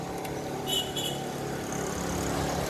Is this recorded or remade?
recorded